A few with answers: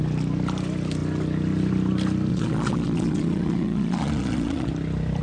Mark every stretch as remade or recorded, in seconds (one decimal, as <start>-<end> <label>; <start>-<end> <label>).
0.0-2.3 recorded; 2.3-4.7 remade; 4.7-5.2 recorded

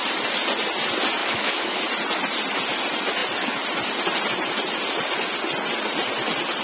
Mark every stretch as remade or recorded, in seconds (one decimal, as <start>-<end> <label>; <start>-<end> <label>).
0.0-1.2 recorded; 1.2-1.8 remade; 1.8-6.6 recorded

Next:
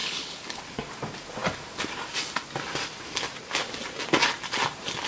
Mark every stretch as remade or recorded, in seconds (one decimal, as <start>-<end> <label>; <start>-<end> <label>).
0.0-0.6 remade; 0.6-5.1 recorded